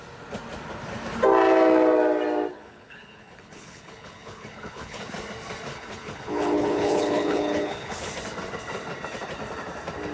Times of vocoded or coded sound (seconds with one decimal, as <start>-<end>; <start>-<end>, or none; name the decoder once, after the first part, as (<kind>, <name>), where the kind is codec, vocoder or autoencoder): 2.5-5.0 (codec, HILCodec); 5.7-8.1